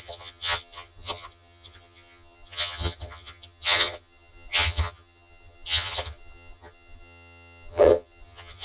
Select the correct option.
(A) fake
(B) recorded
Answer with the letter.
A